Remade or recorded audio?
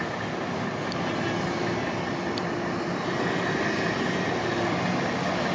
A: recorded